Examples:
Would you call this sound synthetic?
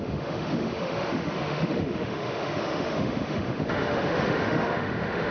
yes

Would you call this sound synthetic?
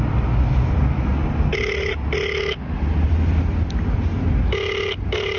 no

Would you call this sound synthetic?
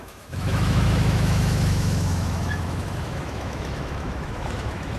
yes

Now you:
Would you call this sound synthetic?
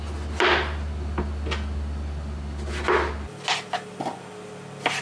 no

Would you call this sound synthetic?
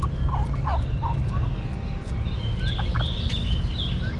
no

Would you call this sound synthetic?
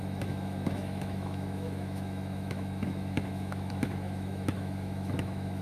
yes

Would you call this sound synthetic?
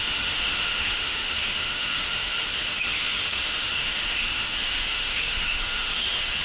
yes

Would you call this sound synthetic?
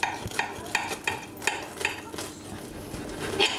no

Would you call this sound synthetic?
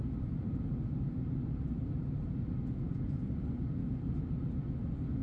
no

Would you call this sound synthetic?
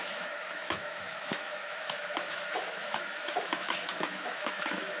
yes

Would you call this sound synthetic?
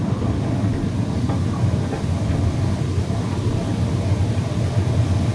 no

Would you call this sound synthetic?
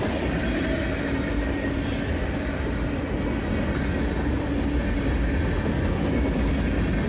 no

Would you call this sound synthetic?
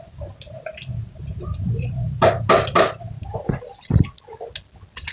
no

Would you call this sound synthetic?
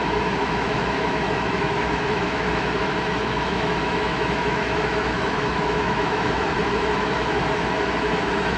yes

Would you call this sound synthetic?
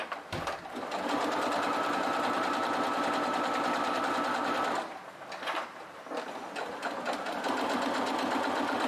no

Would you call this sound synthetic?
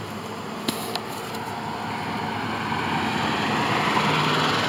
no